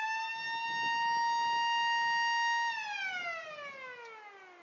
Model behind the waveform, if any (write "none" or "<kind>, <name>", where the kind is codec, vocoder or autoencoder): none